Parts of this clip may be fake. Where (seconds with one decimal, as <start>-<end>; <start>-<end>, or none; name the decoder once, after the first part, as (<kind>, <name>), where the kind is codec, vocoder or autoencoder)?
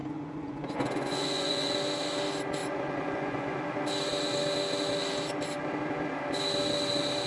0.0-1.7 (vocoder, Vocos); 2.6-3.6